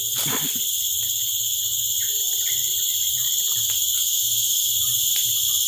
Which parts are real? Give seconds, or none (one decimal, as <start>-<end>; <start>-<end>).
0.0-5.7